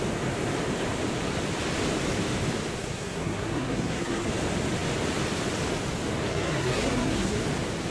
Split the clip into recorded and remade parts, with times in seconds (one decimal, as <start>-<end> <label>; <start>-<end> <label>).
0.0-2.8 recorded; 2.8-4.3 remade; 4.3-6.3 recorded; 6.3-7.4 remade; 7.4-7.9 recorded